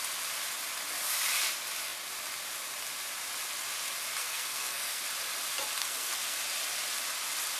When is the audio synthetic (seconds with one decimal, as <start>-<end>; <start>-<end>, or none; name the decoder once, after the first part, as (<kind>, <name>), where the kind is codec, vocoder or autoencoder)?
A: 4.2-5.0 (codec, SNAC); 5.8-6.4